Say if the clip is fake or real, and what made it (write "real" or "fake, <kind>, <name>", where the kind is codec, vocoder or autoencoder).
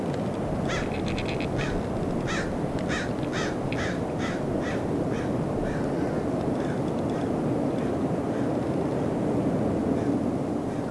real